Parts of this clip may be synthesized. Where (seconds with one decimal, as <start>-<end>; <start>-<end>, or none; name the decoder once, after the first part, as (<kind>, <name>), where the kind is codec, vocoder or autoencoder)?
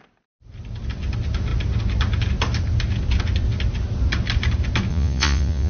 4.9-5.7 (vocoder, Vocos)